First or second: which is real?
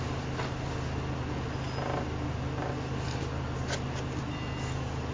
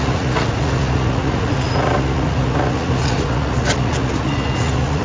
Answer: first